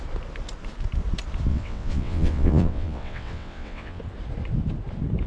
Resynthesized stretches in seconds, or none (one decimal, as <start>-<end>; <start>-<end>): 1.5-4.0